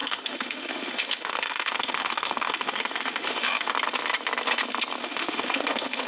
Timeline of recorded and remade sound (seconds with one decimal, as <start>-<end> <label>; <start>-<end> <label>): 0.0-3.7 remade; 3.7-5.0 recorded; 5.0-6.1 remade